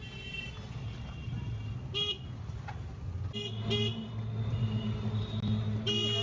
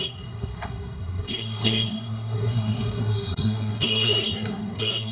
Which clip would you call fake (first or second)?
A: second